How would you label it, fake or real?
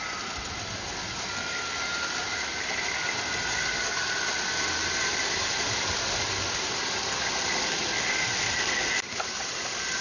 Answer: real